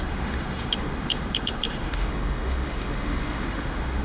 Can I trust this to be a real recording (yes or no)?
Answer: no